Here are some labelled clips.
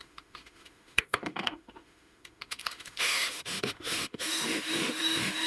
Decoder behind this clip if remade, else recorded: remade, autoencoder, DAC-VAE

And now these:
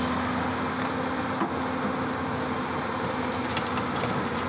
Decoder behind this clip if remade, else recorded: recorded